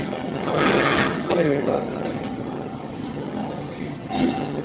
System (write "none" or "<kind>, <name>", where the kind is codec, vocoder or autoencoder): vocoder, HiFi-GAN